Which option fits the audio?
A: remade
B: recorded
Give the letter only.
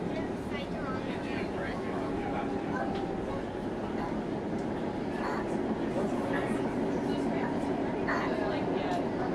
B